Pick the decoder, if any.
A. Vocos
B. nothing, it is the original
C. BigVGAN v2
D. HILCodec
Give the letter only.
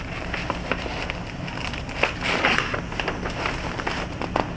B